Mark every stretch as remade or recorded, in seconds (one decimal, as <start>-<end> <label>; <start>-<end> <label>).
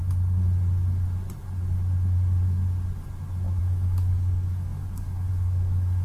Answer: 0.0-3.6 recorded; 3.6-6.0 remade